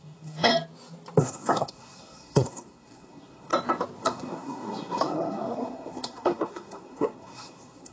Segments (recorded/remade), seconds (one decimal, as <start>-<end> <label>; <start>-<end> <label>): 0.0-0.5 remade; 0.5-1.2 recorded; 1.2-3.5 remade; 3.5-4.0 recorded; 4.0-7.9 remade